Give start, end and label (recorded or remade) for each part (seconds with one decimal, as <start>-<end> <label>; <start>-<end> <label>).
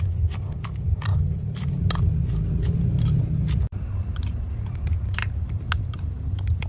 0.0-6.7 recorded